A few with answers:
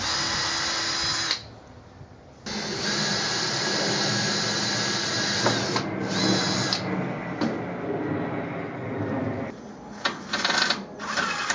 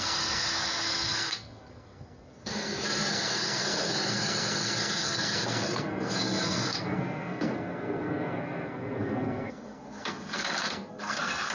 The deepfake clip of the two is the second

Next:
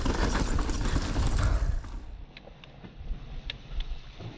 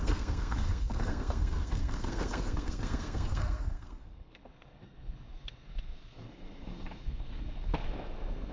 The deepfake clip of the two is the second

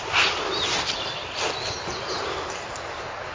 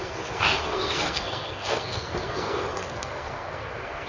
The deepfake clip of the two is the second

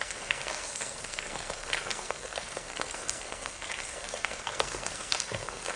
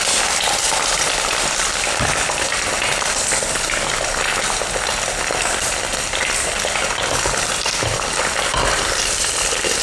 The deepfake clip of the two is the first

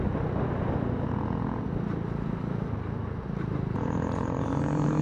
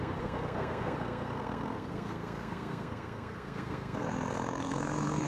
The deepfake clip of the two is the second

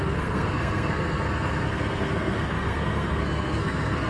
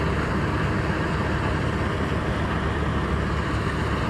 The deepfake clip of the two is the first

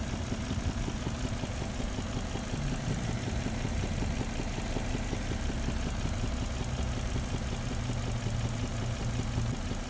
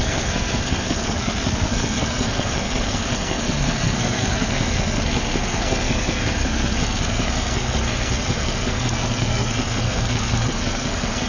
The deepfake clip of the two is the second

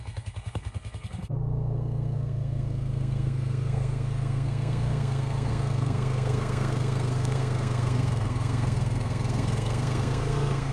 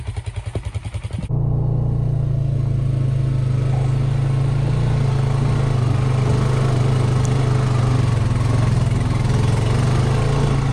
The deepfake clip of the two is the first